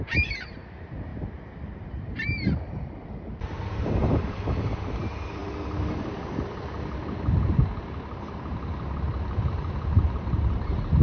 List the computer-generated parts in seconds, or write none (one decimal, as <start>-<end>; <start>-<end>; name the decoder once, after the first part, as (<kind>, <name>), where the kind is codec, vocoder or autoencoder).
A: 0.0-1.1 (vocoder, BigVGAN v2); 1.7-5.4; 9.5-11.0